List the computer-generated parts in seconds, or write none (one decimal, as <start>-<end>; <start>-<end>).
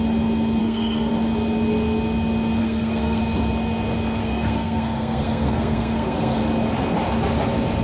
0.6-1.1; 2.6-3.2; 4.2-6.4